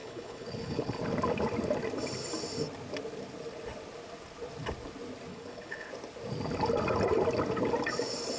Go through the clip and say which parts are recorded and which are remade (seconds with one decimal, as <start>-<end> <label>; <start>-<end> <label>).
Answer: 0.0-1.0 remade; 1.0-5.3 recorded; 5.3-5.9 remade; 5.9-8.4 recorded